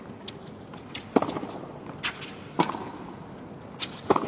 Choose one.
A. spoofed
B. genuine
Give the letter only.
A